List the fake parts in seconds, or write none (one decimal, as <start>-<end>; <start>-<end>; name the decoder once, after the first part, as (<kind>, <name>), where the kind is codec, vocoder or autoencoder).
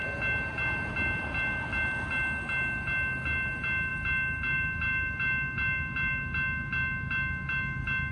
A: none